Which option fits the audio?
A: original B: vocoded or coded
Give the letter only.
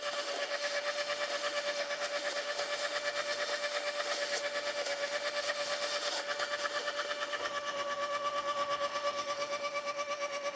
B